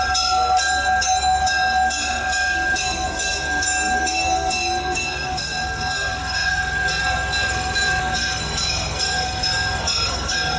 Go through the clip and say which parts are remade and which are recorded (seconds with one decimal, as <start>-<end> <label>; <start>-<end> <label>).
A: 0.0-10.6 remade